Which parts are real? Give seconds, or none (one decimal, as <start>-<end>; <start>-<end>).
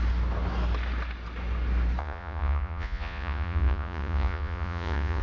0.0-2.0